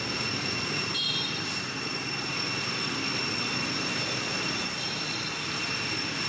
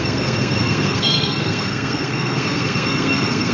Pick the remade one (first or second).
second